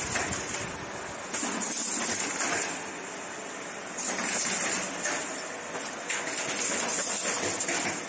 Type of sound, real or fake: real